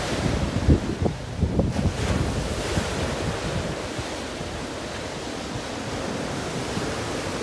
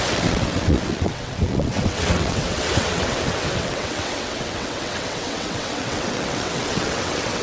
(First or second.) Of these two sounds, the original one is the first